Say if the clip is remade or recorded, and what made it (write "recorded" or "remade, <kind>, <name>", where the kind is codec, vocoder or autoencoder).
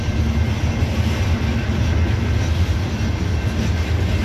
recorded